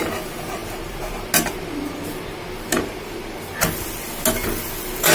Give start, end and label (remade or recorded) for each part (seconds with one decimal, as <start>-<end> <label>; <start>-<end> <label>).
0.0-5.1 recorded